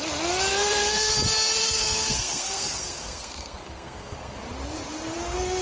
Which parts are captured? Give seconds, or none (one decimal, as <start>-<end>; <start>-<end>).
0.0-0.5; 1.1-1.6; 4.4-5.6